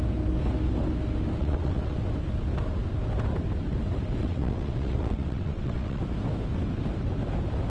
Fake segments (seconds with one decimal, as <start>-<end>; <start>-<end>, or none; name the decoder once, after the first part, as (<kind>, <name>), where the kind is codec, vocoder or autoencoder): 1.4-2.0 (vocoder, WaveNeXt); 4.2-6.0